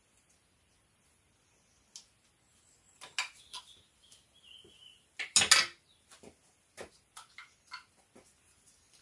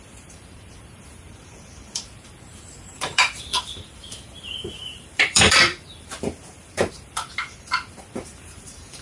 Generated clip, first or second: second